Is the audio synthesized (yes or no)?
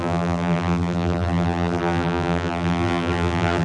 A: yes